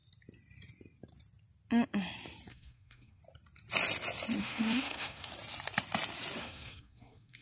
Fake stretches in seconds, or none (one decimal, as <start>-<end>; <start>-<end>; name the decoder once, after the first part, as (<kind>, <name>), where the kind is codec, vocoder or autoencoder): 2.5-3.2 (codec, SNAC); 4.4-5.3; 6.4-7.4